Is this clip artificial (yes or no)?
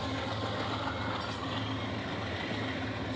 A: no